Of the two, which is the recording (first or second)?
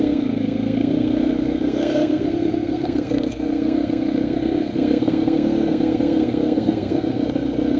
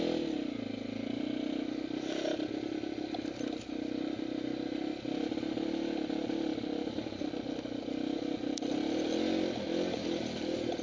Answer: second